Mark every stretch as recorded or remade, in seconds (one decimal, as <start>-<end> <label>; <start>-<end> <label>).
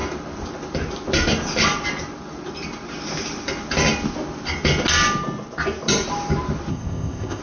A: 0.0-6.7 recorded; 6.7-7.4 remade